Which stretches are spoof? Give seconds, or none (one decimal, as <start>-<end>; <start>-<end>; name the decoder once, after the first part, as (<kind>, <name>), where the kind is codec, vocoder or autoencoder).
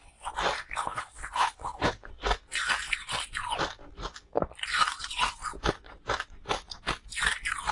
0.8-2.1 (codec, HILCodec)